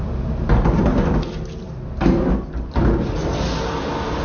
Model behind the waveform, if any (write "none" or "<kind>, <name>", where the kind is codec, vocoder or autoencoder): none